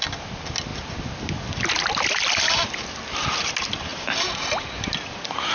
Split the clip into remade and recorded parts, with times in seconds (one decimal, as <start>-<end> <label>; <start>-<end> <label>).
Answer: 0.0-5.5 recorded